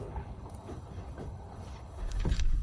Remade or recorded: remade